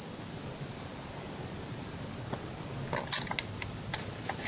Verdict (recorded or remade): recorded